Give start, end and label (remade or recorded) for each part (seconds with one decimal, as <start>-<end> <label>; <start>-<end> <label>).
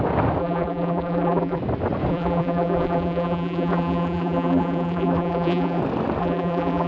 0.0-0.4 recorded; 0.4-1.6 remade; 1.6-2.1 recorded; 2.1-5.8 remade; 5.8-6.2 recorded; 6.2-6.9 remade